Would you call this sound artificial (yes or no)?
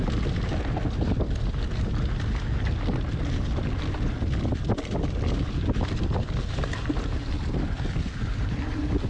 no